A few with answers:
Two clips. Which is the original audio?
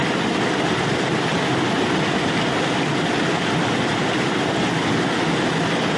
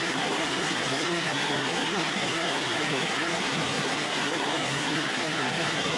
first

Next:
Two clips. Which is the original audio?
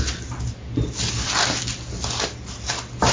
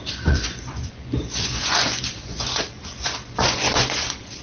first